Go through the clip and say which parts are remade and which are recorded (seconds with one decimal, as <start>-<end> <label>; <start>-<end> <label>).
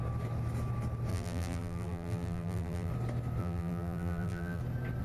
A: 0.0-1.1 recorded; 1.1-2.9 remade; 2.9-3.4 recorded; 3.4-4.6 remade; 4.6-5.0 recorded